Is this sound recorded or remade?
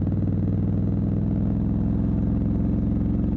recorded